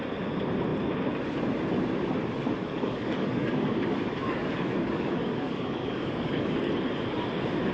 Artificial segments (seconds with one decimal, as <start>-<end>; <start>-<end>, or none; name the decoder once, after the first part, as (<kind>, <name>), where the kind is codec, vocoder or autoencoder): 2.6-6.7 (codec, DAC)